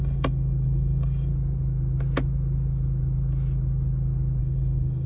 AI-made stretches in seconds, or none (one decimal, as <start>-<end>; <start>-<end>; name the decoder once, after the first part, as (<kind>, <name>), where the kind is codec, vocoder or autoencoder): 0.0-1.3 (codec, DAC); 4.4-5.1